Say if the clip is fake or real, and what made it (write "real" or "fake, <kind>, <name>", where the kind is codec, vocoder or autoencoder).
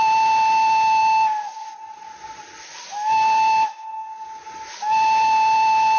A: real